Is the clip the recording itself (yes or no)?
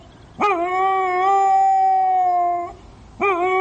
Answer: yes